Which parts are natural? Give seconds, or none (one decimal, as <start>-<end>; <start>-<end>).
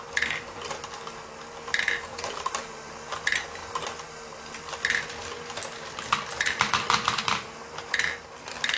0.0-2.1; 2.7-8.8